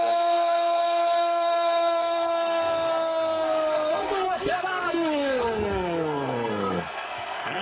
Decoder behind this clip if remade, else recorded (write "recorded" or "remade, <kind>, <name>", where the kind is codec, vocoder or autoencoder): remade, codec, SNAC